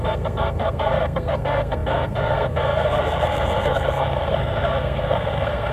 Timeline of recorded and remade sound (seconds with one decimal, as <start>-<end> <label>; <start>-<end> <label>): 0.0-5.7 remade